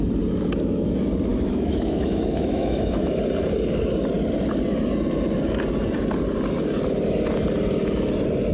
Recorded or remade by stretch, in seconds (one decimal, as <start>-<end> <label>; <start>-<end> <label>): 0.0-1.3 recorded; 1.3-3.2 remade; 3.2-8.5 recorded